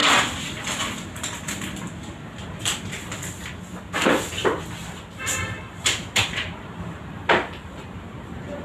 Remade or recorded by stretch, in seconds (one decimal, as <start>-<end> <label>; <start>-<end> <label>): 0.0-2.2 remade; 2.2-8.6 recorded